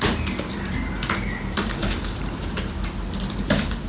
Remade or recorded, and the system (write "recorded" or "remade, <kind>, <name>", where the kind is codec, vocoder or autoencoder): recorded